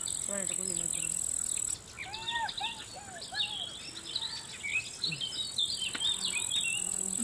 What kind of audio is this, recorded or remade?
recorded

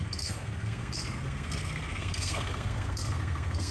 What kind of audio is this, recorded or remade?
remade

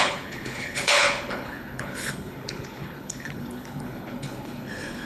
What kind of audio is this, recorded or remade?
remade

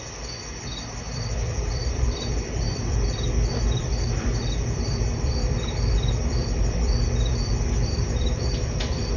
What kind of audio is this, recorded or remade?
remade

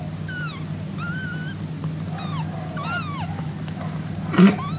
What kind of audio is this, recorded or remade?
recorded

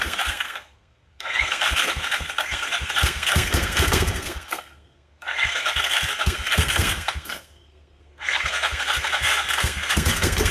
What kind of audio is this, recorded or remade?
remade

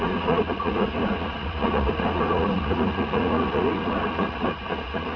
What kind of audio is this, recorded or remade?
remade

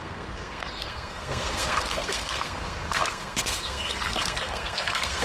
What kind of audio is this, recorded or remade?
remade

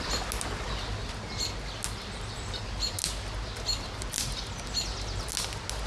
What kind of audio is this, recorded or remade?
recorded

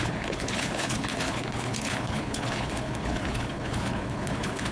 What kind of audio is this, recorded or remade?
remade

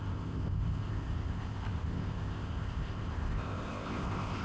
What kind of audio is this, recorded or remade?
remade